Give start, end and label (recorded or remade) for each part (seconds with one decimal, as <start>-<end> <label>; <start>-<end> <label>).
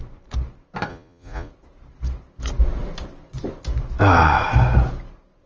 0.0-0.9 recorded; 0.9-1.5 remade; 1.5-5.5 recorded